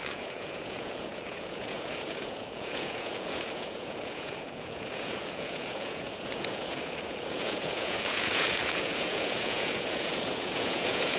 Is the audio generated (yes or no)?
yes